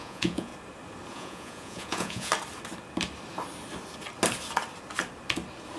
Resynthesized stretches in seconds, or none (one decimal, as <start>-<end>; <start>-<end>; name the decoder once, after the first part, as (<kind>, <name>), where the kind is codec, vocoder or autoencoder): 0.0-0.5 (vocoder, Vocos); 1.1-2.3